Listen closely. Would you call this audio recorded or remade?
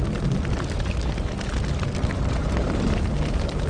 recorded